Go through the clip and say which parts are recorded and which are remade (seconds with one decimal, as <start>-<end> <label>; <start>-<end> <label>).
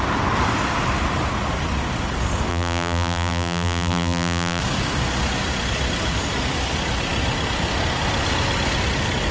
0.0-2.5 recorded; 2.5-4.6 remade; 4.6-9.3 recorded